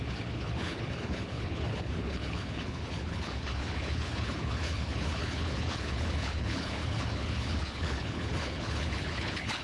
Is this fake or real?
fake